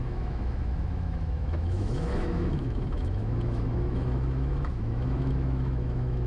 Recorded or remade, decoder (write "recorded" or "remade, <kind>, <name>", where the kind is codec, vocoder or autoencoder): remade, autoencoder, DAC-VAE